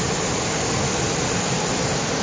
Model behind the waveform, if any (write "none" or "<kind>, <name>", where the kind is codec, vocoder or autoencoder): none